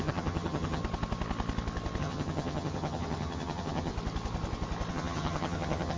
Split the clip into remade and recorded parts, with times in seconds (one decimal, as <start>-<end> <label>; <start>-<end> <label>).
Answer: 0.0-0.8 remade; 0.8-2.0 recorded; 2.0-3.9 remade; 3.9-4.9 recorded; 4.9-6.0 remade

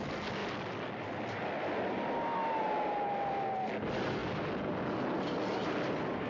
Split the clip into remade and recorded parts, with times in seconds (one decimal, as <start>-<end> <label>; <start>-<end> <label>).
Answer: 0.0-6.3 recorded

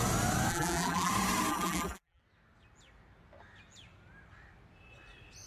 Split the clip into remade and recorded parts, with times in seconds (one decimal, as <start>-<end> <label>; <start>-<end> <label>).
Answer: 0.0-0.5 recorded; 0.5-1.1 remade; 1.1-1.5 recorded; 1.5-2.2 remade; 2.2-5.5 recorded